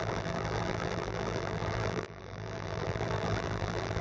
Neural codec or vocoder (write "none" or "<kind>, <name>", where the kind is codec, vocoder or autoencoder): vocoder, BigVGAN v2